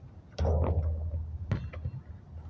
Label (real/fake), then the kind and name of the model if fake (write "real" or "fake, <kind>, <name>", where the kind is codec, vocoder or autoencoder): real